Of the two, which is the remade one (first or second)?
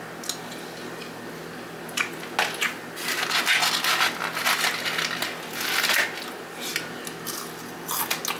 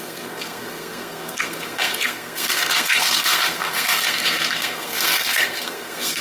second